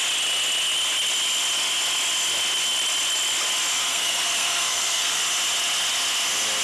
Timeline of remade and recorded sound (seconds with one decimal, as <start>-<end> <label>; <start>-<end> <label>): 0.0-3.9 recorded; 3.9-5.2 remade; 5.2-6.6 recorded